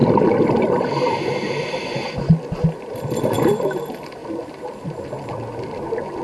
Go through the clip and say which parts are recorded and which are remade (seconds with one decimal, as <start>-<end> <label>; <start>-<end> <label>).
0.0-6.2 recorded